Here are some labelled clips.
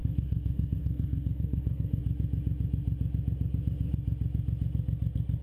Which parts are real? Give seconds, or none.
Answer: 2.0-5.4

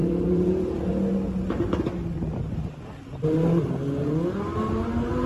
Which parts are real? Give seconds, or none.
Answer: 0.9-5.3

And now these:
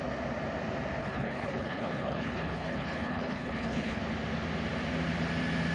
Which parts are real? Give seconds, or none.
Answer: 0.0-1.0; 4.0-5.7

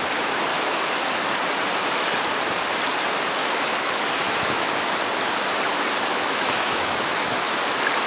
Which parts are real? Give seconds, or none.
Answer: 0.0-0.5; 1.1-3.4; 4.7-6.1; 7.5-8.1

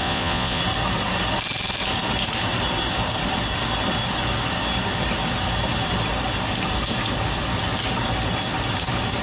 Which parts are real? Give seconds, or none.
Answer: 0.6-9.2

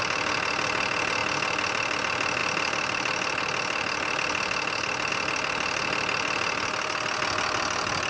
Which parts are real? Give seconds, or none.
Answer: 0.0-8.1